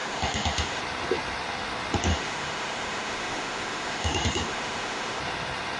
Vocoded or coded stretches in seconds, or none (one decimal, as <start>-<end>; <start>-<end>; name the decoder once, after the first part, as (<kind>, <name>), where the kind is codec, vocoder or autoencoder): 0.0-0.8 (autoencoder, DAC-VAE); 2.1-5.2